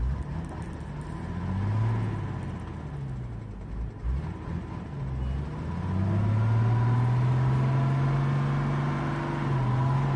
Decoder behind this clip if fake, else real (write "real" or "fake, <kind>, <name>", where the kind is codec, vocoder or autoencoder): real